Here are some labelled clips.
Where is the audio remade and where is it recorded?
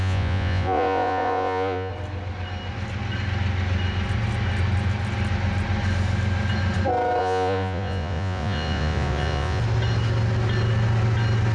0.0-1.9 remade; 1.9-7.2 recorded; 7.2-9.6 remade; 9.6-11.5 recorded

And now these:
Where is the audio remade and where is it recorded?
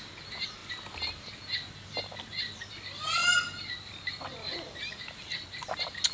0.0-6.1 recorded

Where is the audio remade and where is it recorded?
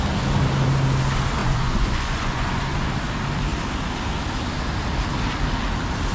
0.0-1.4 recorded; 1.4-2.6 remade; 2.6-6.1 recorded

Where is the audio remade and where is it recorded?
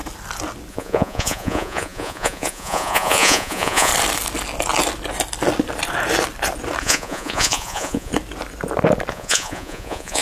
0.0-0.7 recorded; 0.7-3.9 remade; 3.9-6.8 recorded; 6.8-8.1 remade; 8.1-9.1 recorded; 9.1-10.2 remade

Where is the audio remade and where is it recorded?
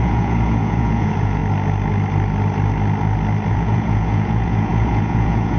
0.0-1.4 remade; 1.4-3.5 recorded; 3.5-5.6 remade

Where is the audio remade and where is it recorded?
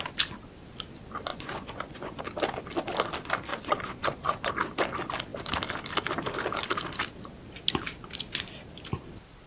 0.0-1.3 recorded; 1.3-2.2 remade; 2.2-3.5 recorded; 3.5-4.5 remade; 4.5-9.5 recorded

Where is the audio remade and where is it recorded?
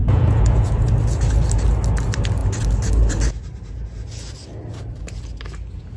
0.0-0.9 remade; 0.9-6.0 recorded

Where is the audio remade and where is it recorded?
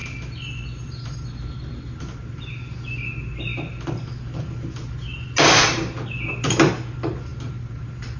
0.0-8.2 recorded